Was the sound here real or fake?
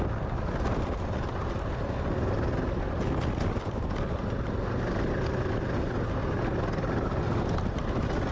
real